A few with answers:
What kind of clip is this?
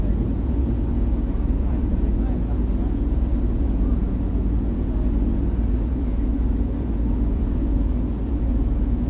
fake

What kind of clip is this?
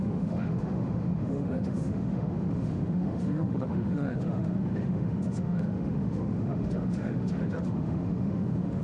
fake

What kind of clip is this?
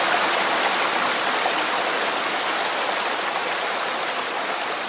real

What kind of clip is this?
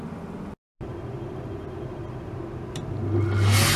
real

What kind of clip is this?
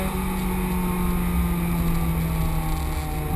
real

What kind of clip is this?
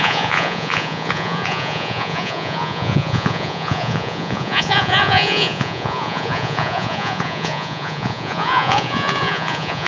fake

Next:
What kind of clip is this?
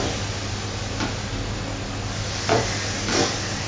real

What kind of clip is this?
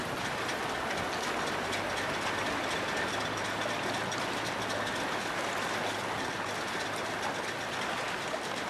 real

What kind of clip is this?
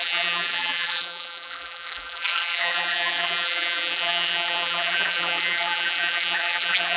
fake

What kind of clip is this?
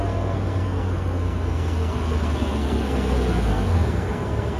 fake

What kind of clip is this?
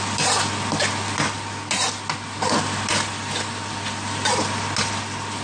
real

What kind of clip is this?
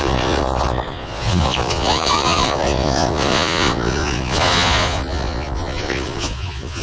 fake